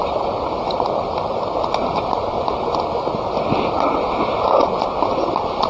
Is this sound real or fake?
real